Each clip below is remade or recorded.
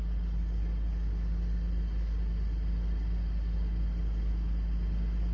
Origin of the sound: recorded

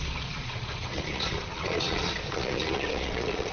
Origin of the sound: remade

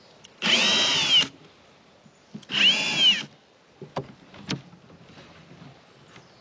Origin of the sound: recorded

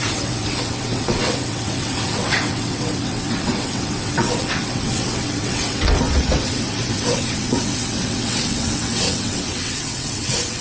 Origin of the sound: remade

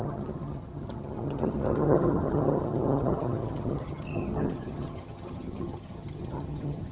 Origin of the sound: remade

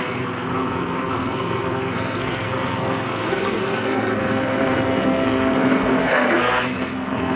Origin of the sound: remade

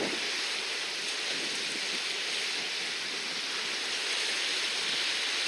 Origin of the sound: recorded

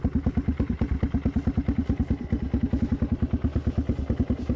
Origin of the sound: recorded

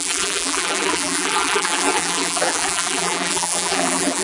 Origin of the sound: remade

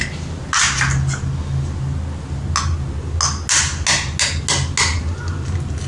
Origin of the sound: recorded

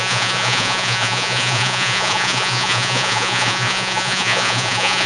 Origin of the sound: remade